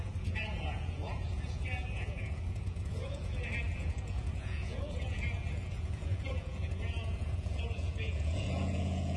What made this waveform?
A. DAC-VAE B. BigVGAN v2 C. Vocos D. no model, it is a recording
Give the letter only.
C